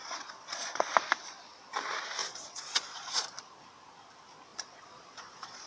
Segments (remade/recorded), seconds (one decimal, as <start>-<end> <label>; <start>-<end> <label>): 0.0-0.9 remade; 0.9-2.2 recorded; 2.2-3.4 remade; 3.4-4.5 recorded; 4.5-5.7 remade